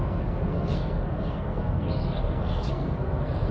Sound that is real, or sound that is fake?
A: fake